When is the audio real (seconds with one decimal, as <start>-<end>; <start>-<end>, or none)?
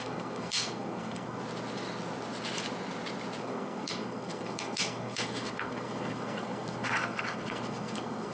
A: 1.4-3.4